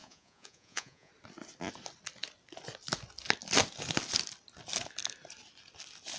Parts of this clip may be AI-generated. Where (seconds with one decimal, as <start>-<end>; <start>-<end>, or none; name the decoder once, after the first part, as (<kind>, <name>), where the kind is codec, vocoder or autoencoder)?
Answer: 0.0-1.1 (vocoder, Vocos)